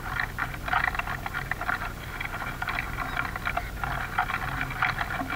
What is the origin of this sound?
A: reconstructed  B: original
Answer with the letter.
B